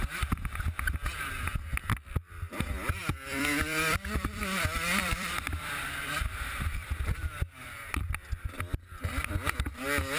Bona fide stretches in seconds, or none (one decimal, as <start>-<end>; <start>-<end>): 0.0-3.0; 4.4-5.0; 9.3-10.2